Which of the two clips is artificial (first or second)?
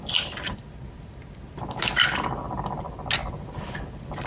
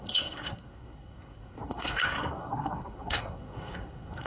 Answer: second